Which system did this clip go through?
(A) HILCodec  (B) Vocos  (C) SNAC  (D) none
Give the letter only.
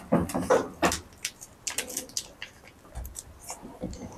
D